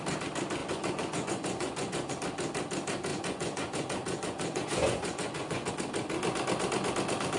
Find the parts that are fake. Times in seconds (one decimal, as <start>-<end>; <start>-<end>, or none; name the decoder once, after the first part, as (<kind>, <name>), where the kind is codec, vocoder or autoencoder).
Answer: 0.6-2.1 (vocoder, Vocos); 3.1-5.7